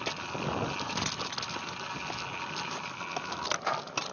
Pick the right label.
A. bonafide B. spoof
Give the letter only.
A